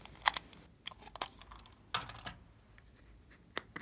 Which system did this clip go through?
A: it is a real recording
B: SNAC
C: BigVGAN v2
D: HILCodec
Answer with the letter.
A